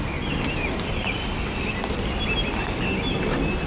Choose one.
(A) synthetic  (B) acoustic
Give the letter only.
B